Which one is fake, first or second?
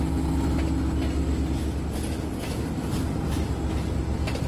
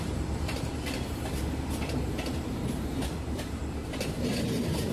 second